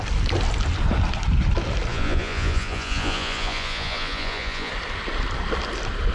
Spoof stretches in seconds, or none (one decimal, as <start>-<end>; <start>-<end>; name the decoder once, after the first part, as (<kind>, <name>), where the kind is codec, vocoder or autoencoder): 1.9-4.7 (vocoder, Vocos)